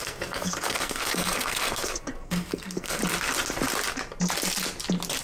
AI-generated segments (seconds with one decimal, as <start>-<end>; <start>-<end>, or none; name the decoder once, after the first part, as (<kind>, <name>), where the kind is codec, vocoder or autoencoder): 0.0-3.0 (codec, SNAC)